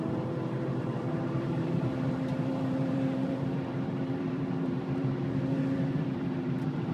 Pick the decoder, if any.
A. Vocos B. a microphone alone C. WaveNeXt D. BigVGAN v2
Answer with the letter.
D